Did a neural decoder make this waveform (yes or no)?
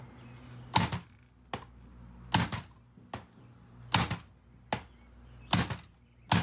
no